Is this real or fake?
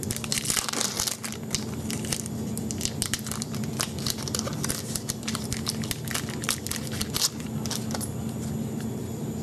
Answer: real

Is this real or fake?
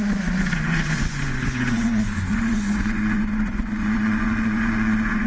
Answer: fake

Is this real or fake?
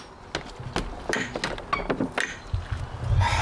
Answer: real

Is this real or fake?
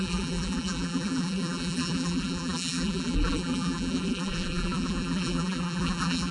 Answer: fake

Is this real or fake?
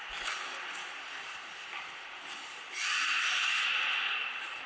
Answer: real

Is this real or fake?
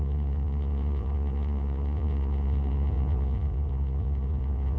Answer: fake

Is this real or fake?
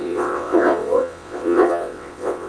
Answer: fake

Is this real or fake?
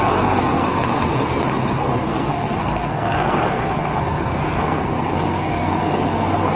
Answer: fake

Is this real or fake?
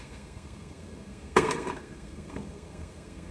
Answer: fake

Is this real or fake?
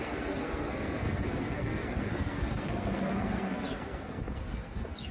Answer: fake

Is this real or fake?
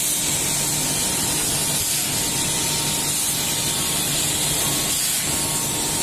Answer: real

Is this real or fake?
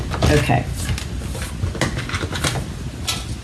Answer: real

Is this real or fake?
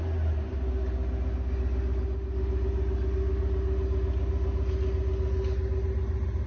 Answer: real